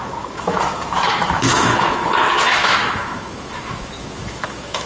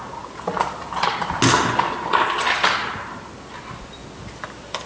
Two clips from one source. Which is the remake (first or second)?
first